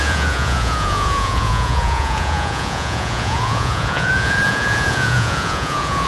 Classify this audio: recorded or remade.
remade